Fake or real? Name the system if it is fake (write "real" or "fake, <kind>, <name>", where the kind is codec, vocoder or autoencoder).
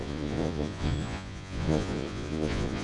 fake, vocoder, Vocos